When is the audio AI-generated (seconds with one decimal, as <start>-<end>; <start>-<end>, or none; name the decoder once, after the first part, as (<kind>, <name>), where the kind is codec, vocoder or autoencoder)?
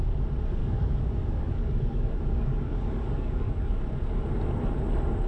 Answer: 0.6-3.8 (codec, DAC)